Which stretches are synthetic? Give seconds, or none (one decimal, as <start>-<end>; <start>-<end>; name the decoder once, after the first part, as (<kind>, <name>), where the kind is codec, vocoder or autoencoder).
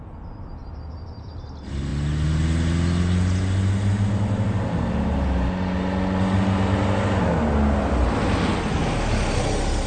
none